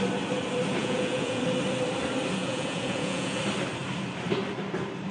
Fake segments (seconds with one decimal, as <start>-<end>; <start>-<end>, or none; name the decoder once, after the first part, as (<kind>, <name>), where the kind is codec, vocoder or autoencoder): 0.8-1.4 (vocoder, Vocos); 2.4-3.4